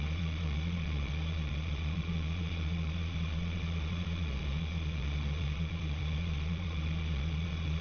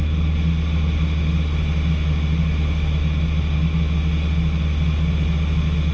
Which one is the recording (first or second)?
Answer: second